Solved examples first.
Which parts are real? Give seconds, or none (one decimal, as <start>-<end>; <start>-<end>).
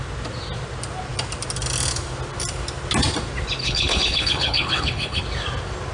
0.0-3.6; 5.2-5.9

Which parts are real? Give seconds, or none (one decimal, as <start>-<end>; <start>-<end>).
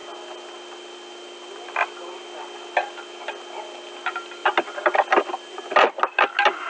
0.0-6.7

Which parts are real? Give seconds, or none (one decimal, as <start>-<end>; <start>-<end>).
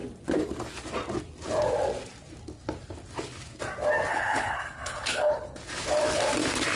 0.0-4.1; 5.5-6.8